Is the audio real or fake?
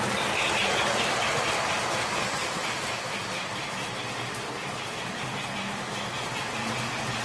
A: real